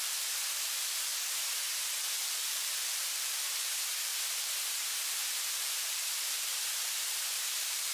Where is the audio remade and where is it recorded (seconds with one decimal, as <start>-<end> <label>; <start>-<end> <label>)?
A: 0.0-1.1 remade; 1.1-2.2 recorded; 2.2-4.1 remade; 4.1-5.5 recorded; 5.5-7.9 remade